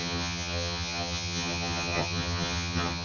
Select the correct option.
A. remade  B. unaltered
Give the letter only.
A